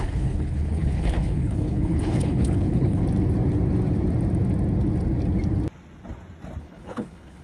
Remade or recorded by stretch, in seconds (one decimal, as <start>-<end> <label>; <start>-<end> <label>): 0.0-3.0 remade; 3.0-6.6 recorded; 6.6-7.4 remade